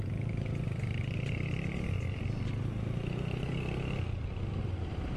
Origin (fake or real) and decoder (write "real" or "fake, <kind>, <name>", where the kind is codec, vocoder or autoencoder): real